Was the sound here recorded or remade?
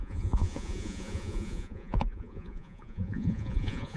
remade